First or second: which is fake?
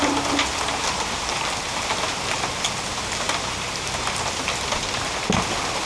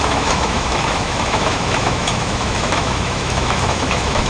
second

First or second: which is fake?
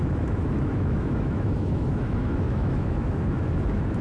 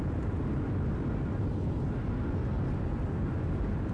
first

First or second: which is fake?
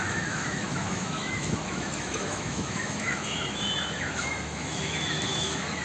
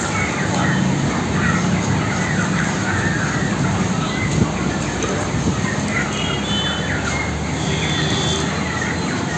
first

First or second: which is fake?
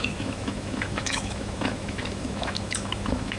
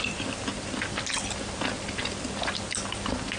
first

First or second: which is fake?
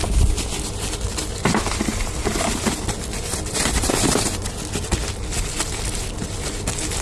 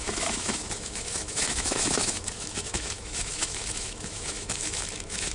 second